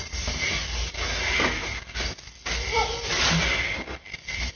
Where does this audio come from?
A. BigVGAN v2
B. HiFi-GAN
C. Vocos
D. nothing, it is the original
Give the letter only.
A